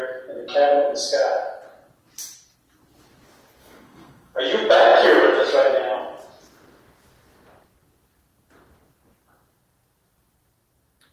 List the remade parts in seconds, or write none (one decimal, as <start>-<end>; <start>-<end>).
3.6-4.4